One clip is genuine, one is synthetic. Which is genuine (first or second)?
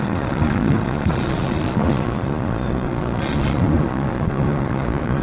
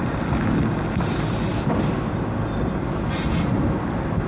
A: second